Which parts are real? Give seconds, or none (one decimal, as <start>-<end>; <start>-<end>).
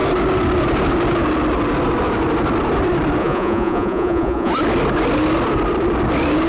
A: 0.0-3.2; 4.5-6.5